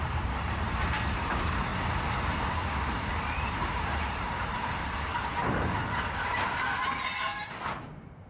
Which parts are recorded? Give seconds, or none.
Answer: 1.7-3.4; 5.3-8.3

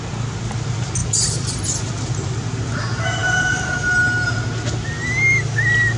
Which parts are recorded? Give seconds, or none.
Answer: 0.0-1.0; 2.8-6.0